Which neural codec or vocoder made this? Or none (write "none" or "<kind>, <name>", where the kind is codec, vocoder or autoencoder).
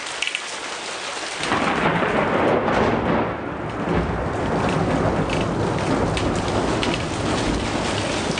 none